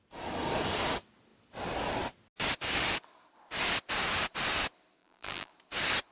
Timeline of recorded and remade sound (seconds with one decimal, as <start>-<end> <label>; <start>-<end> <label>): 0.0-5.0 recorded; 5.0-5.5 remade; 5.5-6.1 recorded